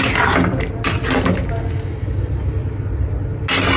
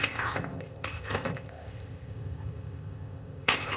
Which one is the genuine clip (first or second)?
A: first